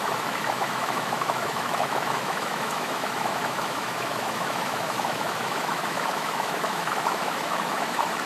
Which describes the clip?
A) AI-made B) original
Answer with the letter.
A